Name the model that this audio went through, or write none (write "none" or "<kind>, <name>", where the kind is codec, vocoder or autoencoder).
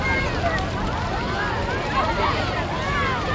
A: none